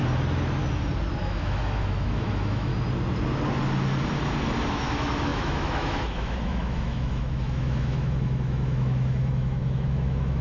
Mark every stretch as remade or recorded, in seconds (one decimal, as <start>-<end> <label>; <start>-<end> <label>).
0.0-1.2 recorded; 1.2-2.7 remade; 2.7-4.7 recorded; 4.7-10.4 remade